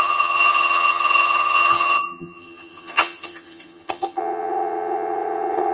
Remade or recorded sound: remade